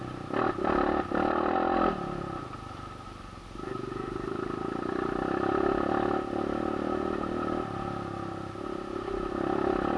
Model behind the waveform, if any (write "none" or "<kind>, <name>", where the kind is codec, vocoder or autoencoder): none